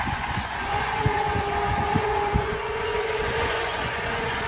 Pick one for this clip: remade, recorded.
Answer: remade